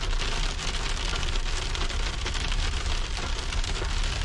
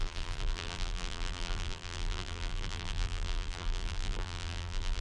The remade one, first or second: second